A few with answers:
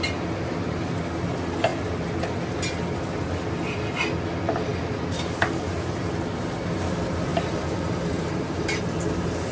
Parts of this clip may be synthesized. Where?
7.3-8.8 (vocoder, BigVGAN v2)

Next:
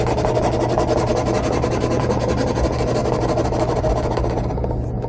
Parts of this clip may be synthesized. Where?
none

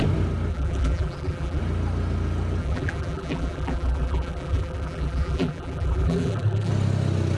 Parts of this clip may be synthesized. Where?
0.5-1.6 (vocoder, BigVGAN v2); 2.6-6.7

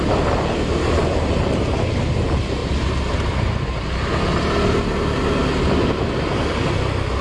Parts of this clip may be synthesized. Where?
1.0-2.1 (vocoder, BigVGAN v2); 2.6-4.1

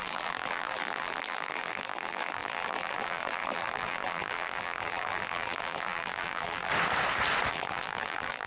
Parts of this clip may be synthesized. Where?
0.0-6.7 (vocoder, BigVGAN v2); 7.5-8.5

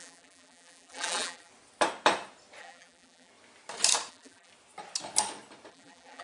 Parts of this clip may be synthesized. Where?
0.0-1.5 (vocoder, BigVGAN v2); 2.6-3.3; 4.1-4.5; 5.7-6.2

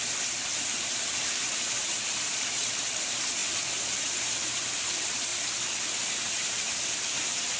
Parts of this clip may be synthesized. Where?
0.0-5.3 (vocoder, BigVGAN v2); 6.1-7.6